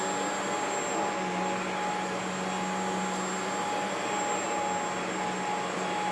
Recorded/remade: recorded